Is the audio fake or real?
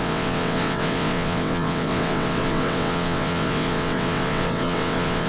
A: fake